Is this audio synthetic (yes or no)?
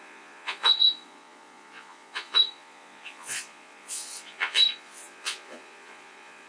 yes